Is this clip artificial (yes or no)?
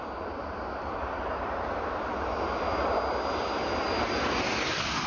no